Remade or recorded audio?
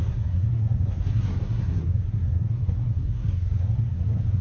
remade